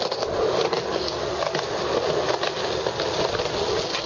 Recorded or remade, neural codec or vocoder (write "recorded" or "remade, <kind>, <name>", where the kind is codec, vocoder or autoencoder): recorded